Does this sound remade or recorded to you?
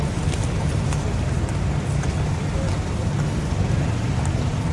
recorded